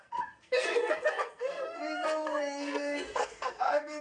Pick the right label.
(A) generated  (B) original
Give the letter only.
A